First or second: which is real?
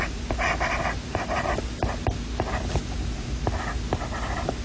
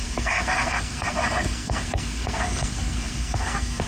first